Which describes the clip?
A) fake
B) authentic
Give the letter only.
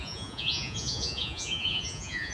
A